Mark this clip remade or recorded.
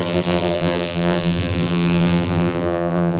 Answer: remade